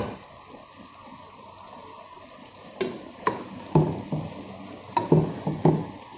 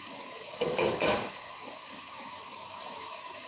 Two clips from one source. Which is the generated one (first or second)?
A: second